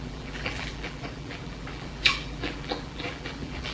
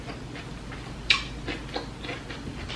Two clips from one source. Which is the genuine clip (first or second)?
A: second